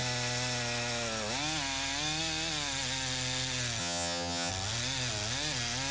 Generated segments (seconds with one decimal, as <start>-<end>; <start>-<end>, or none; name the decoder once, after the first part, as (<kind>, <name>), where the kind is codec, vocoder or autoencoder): 3.8-4.5 (vocoder, HiFi-GAN)